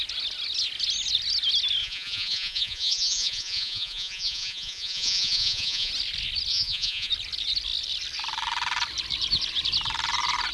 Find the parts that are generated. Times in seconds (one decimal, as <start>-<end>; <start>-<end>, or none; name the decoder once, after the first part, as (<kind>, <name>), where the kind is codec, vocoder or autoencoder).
1.8-5.9 (vocoder, Vocos); 6.5-7.1